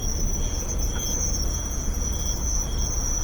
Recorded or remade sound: remade